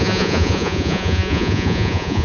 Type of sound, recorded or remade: remade